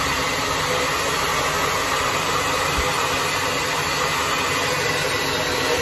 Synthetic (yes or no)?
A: no